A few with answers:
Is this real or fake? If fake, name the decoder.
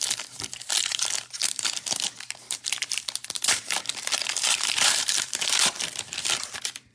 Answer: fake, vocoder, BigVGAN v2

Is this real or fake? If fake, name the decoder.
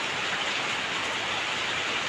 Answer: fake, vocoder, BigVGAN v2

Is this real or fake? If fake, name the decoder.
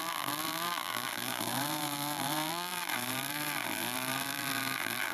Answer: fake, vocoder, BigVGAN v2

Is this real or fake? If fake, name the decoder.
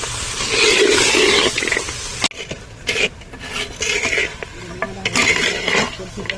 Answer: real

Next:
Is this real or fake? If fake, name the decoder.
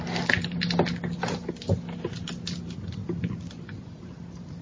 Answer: real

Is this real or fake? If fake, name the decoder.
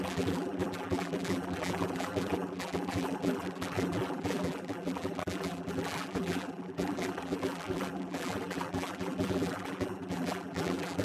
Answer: fake, vocoder, BigVGAN v2